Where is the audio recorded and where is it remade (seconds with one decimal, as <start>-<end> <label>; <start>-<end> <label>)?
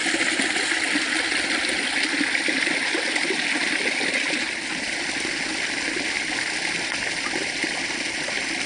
0.0-8.7 recorded